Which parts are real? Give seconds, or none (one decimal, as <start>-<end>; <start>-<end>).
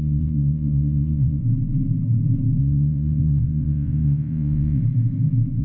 1.4-2.6; 4.8-5.6